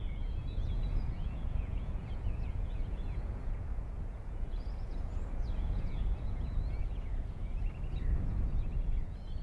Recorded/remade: remade